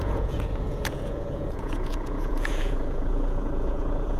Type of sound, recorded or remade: remade